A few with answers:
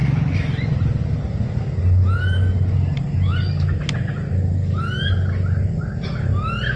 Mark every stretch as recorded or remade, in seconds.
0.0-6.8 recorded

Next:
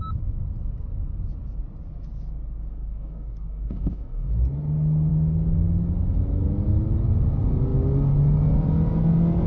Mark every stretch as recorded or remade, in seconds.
0.0-2.7 recorded; 2.7-4.3 remade; 4.3-9.5 recorded

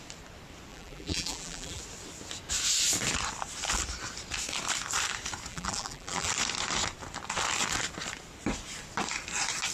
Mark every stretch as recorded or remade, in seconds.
0.0-0.7 recorded; 0.7-1.8 remade; 1.8-5.5 recorded; 5.5-6.3 remade; 6.3-9.7 recorded

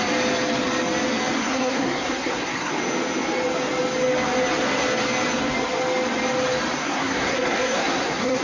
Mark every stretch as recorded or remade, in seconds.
0.0-1.4 recorded; 1.4-2.7 remade; 2.7-6.8 recorded; 6.8-8.4 remade

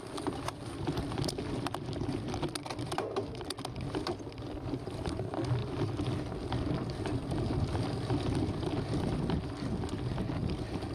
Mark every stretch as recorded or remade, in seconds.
0.0-10.9 recorded

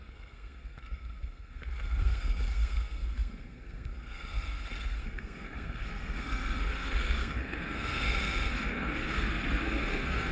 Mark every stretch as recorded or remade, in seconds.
0.0-10.3 remade

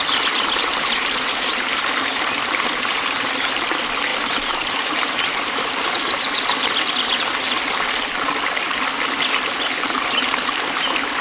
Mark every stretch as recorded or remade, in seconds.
0.0-4.1 recorded; 4.1-6.9 remade; 6.9-11.2 recorded